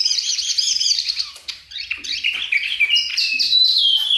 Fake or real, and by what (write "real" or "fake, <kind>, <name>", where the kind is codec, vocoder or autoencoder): fake, vocoder, BigVGAN v2